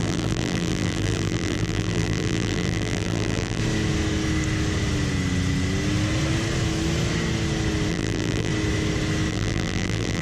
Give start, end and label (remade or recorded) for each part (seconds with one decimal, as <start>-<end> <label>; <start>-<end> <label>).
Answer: 0.0-3.6 remade; 3.6-7.9 recorded; 7.9-8.5 remade; 8.5-9.3 recorded; 9.3-10.2 remade